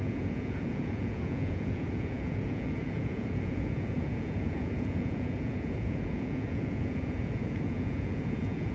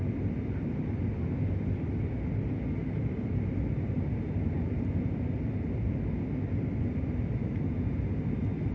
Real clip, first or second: second